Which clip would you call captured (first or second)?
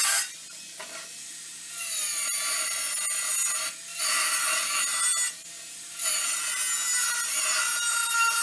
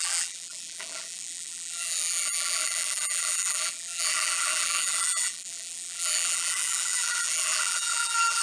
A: first